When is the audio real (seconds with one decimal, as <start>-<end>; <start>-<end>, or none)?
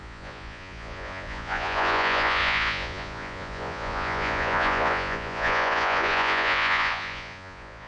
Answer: none